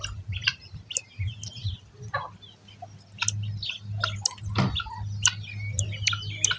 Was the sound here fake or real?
real